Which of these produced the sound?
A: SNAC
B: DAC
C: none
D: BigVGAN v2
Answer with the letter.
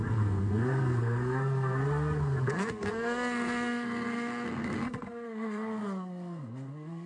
A